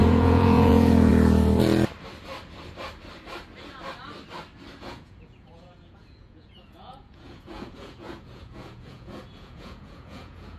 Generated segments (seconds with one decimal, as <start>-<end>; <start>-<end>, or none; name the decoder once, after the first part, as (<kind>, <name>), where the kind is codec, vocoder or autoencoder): 0.0-1.1 (vocoder, Vocos); 4.8-10.6